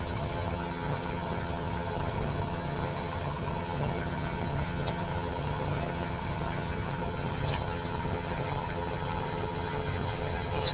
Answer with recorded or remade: remade